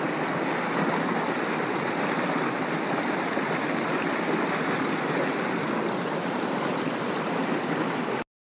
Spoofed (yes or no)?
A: no